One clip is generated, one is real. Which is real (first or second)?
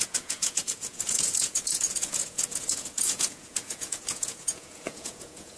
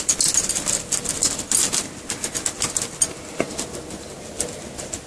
second